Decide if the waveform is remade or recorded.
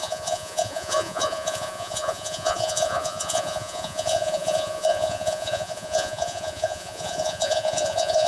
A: remade